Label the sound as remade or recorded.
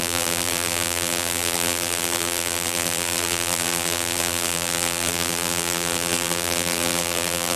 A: remade